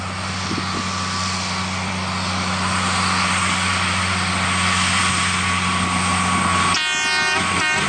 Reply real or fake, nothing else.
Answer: real